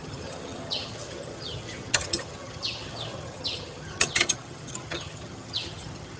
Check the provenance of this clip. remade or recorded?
remade